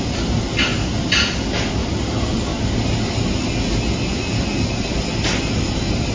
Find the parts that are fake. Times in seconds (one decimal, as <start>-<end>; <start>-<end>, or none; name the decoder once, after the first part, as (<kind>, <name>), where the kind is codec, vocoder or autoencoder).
none